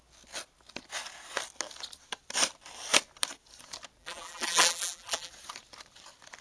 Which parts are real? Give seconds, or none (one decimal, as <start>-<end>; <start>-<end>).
0.0-4.0; 5.3-6.4